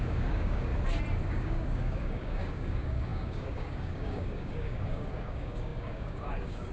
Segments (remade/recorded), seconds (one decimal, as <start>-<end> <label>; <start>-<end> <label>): 0.0-0.7 remade; 0.7-1.3 recorded; 1.3-6.7 remade

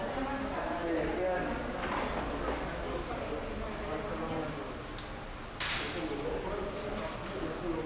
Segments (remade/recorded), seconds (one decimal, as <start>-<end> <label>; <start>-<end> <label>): 0.0-7.9 recorded

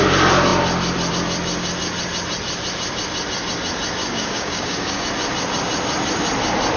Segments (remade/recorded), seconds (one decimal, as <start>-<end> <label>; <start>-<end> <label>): 0.0-4.0 recorded; 4.0-5.1 remade; 5.1-6.8 recorded